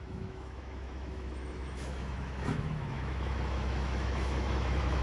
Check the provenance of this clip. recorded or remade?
remade